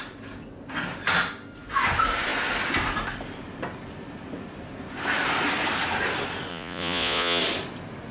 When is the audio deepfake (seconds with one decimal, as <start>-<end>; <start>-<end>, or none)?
6.5-7.4